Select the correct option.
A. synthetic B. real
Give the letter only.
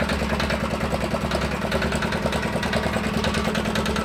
B